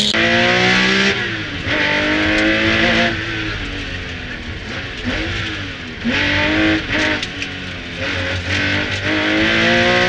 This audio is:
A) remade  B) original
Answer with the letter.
B